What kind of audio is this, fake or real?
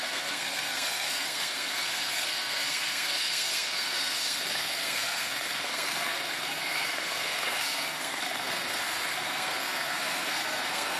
fake